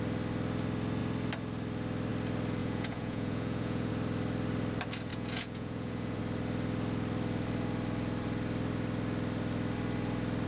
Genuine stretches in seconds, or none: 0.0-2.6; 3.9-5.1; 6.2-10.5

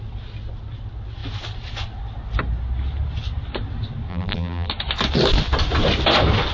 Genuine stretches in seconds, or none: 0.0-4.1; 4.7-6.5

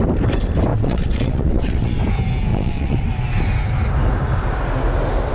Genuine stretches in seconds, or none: 0.0-0.7; 2.0-2.5; 3.1-5.3

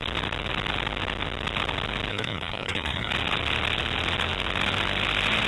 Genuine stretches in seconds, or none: 0.0-2.1; 3.1-5.5

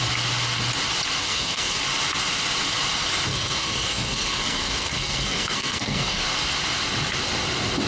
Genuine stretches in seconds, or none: 0.0-1.2; 1.8-3.3; 6.2-7.9

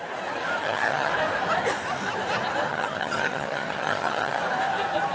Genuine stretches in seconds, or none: 0.0-0.6; 1.1-2.7; 4.4-5.1

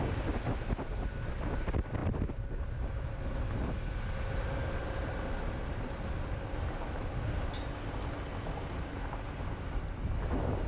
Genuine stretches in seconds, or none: 0.0-10.7